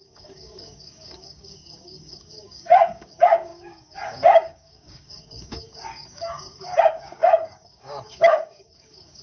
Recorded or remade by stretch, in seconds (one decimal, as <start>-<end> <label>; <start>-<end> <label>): 0.0-9.2 remade